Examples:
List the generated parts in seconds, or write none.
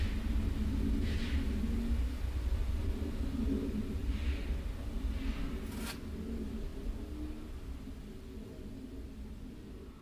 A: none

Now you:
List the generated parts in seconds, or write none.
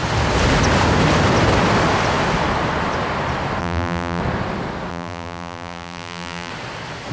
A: 3.6-4.2 (vocoder, BigVGAN v2); 4.9-6.5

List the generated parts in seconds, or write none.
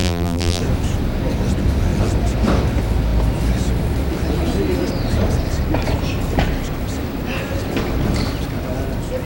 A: 0.0-0.6 (vocoder, BigVGAN v2)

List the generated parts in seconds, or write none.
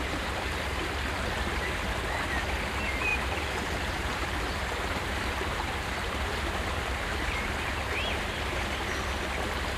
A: 3.1-8.3 (vocoder, BigVGAN v2)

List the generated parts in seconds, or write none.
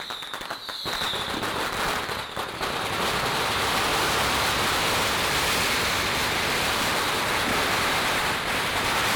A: 3.9-4.5 (vocoder, BigVGAN v2); 6.2-6.8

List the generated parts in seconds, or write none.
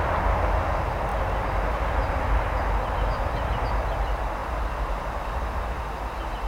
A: none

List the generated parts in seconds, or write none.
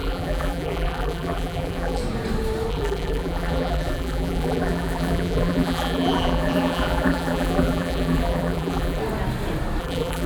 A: 0.0-2.0 (vocoder, BigVGAN v2); 2.7-9.0; 9.8-10.3